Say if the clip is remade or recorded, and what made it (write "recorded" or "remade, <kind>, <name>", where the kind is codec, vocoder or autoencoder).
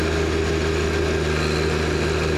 recorded